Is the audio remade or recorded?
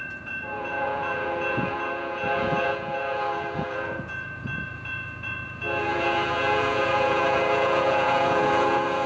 remade